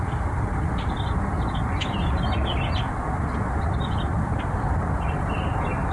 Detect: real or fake real